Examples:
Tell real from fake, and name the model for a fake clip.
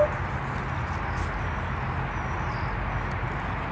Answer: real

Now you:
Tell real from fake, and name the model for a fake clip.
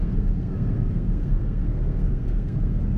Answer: fake, codec, SNAC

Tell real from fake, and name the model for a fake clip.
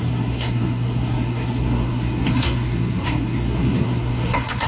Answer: fake, codec, SNAC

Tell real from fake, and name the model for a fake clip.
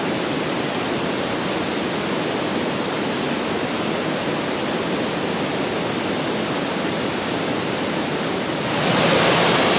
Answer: real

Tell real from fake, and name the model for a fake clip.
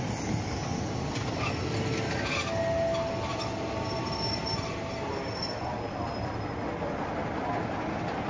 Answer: real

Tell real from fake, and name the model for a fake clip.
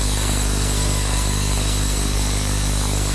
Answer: fake, codec, SNAC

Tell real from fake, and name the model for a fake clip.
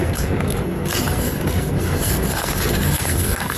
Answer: fake, codec, SNAC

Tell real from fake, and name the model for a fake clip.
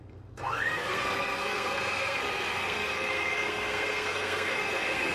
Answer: fake, codec, SNAC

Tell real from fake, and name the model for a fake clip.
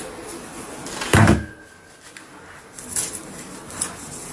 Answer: real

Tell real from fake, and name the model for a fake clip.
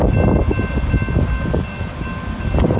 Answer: real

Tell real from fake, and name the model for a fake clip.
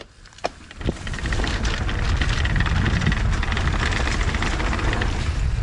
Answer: real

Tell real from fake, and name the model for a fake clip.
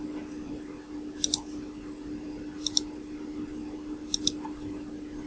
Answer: real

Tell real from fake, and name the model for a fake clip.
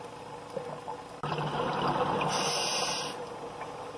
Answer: real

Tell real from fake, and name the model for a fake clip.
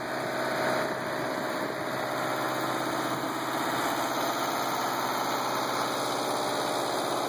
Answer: real